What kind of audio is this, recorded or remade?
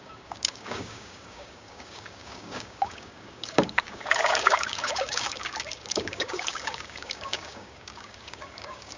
remade